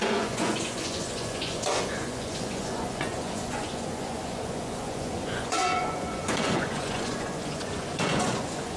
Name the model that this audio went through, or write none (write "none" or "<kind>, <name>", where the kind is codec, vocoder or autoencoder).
vocoder, Vocos